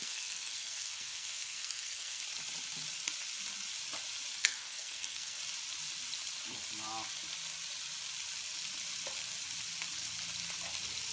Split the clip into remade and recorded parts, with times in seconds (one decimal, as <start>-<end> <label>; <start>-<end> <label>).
0.0-2.2 remade; 2.2-4.4 recorded; 4.4-5.4 remade; 5.4-11.1 recorded